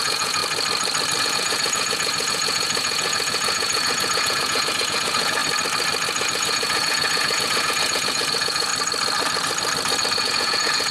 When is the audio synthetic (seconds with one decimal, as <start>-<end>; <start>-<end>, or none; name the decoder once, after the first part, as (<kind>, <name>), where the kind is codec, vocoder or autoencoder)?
0.0-0.4 (vocoder, Vocos); 1.2-5.4; 6.2-8.7; 10.2-10.9